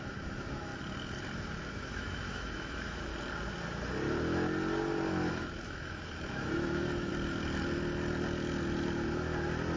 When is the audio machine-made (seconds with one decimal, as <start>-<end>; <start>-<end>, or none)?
0.0-0.7; 1.7-3.1; 5.3-7.1